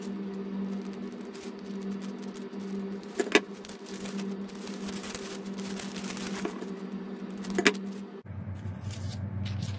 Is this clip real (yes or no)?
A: yes